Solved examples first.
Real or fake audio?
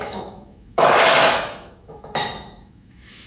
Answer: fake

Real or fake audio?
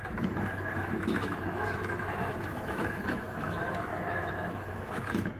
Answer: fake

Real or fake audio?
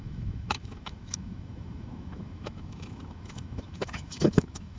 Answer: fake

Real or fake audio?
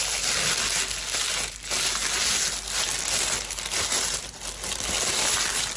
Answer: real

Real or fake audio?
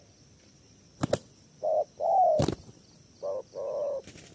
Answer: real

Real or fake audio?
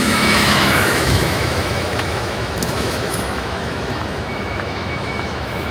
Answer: fake